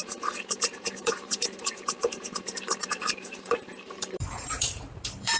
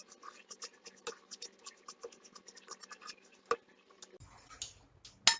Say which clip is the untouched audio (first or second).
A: second